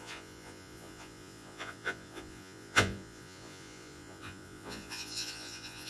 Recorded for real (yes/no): no